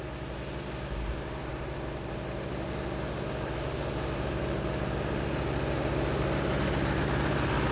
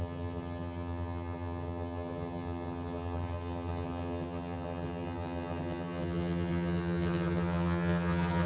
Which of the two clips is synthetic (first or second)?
second